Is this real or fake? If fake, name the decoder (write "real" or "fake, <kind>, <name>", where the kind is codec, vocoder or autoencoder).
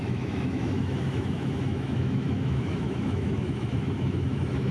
fake, autoencoder, DAC-VAE